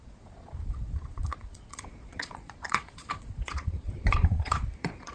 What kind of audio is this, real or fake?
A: fake